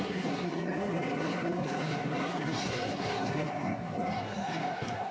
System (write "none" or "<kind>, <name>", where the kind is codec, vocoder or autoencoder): codec, SNAC